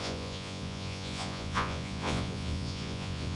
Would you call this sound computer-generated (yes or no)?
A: yes